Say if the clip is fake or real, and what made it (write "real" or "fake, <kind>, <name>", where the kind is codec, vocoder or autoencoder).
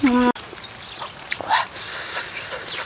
real